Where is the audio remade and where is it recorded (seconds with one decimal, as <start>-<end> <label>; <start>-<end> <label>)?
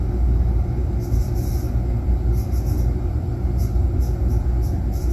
0.0-5.1 recorded